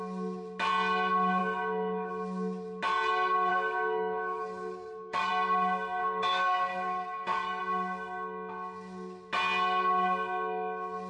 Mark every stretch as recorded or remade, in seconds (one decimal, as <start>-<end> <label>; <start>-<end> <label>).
0.0-1.4 recorded; 1.4-2.1 remade; 2.1-3.5 recorded; 3.5-5.3 remade; 5.3-6.0 recorded; 6.0-7.6 remade; 7.6-11.1 recorded